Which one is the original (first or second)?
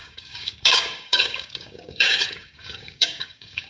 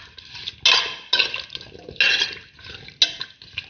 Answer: second